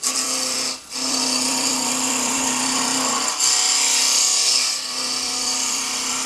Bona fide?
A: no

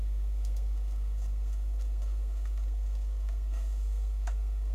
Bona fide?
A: no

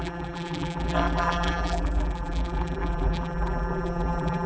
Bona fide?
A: no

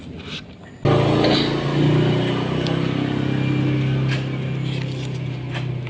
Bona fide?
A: yes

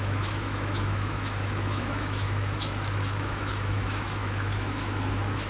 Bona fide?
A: no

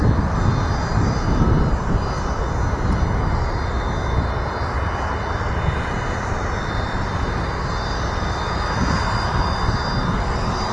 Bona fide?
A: yes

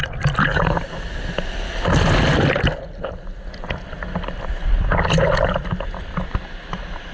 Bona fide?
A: yes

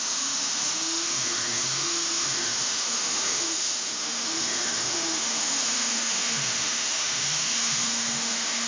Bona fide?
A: no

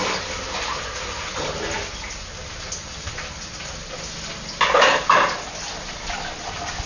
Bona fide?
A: yes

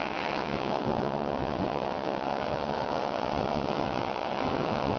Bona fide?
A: no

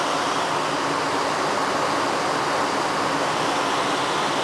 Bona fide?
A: yes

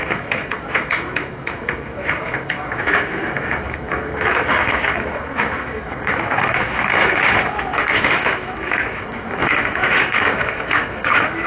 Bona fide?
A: no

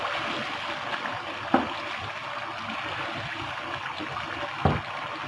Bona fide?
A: yes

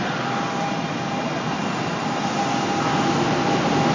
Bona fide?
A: yes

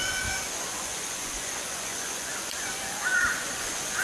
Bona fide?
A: no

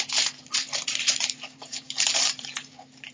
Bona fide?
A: no